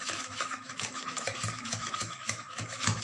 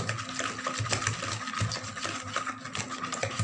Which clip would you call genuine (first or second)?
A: second